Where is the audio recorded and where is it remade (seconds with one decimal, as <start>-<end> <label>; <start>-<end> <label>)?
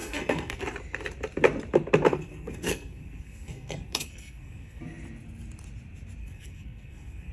0.0-0.6 remade; 0.6-2.1 recorded; 2.1-4.8 remade; 4.8-6.2 recorded; 6.2-7.3 remade